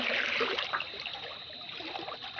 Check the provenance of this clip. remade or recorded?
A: recorded